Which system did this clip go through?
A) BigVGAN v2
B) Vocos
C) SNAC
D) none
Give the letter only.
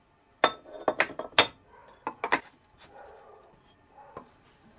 D